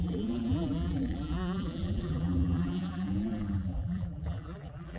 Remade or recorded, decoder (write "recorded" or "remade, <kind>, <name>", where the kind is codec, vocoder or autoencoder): remade, vocoder, BigVGAN v2